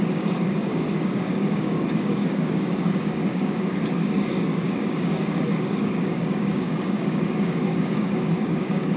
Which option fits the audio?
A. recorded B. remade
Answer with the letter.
B